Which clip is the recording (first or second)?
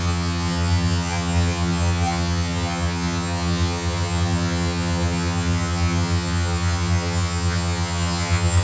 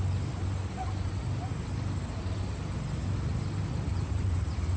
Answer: second